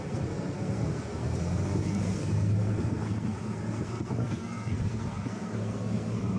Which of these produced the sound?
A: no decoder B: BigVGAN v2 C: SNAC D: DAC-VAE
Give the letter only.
C